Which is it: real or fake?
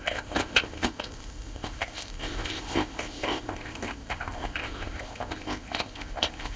fake